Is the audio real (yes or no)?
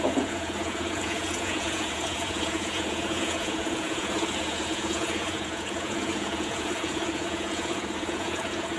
no